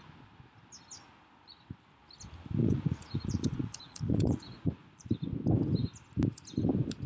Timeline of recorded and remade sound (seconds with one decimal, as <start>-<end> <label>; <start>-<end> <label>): 0.0-2.6 recorded; 2.6-5.1 remade; 5.1-7.1 recorded